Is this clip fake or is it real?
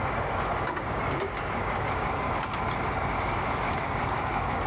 fake